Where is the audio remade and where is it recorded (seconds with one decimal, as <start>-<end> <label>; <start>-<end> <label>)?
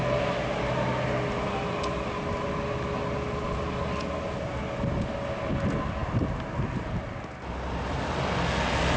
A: 0.0-9.0 recorded